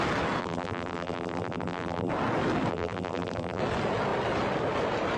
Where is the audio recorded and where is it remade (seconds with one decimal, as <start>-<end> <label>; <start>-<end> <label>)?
0.0-0.4 recorded; 0.4-2.1 remade; 2.1-2.7 recorded; 2.7-3.6 remade; 3.6-5.2 recorded